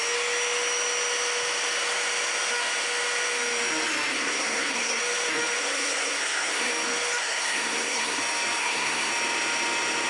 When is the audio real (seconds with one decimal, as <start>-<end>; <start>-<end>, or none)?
0.0-4.1; 5.0-5.6; 6.7-7.2; 8.2-8.6; 9.1-10.1